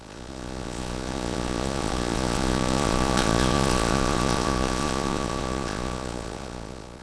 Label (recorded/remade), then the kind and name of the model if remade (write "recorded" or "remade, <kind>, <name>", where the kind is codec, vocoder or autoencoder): remade, vocoder, Vocos